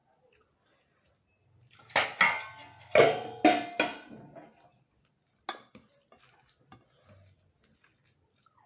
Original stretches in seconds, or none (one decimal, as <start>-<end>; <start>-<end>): 0.0-8.7